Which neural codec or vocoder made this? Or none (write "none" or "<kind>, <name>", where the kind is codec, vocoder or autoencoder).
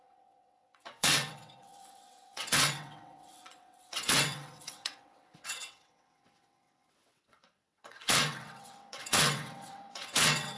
vocoder, WaveNeXt